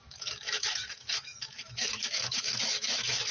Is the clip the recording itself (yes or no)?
no